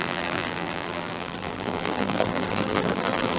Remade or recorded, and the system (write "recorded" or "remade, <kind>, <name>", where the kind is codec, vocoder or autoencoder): remade, vocoder, BigVGAN v2